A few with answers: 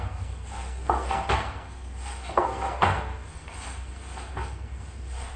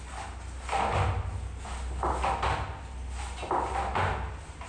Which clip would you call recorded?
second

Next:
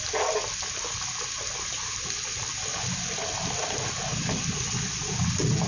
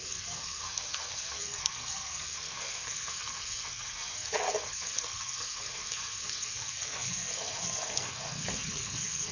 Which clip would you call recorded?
first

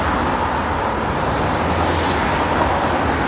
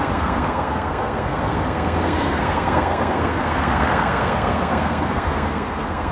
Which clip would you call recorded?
first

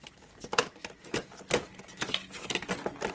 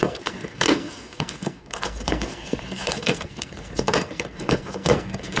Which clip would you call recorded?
first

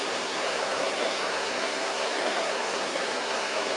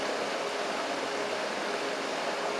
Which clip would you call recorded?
second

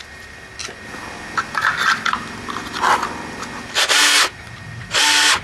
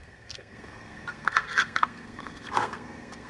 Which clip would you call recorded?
first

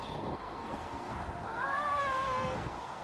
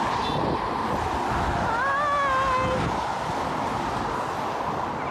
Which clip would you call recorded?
second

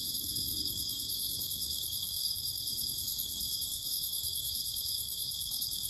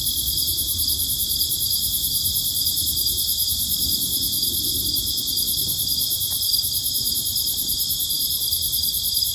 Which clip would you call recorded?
second